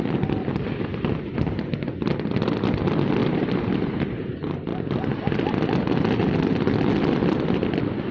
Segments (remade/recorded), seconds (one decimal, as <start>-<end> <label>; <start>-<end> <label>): 0.0-3.2 recorded; 3.2-4.3 remade; 4.3-8.1 recorded